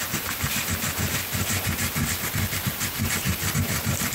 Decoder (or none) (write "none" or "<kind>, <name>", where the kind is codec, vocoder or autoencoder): none